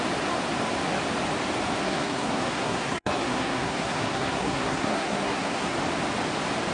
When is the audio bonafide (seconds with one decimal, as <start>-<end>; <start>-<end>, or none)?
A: 0.0-1.8; 5.8-6.7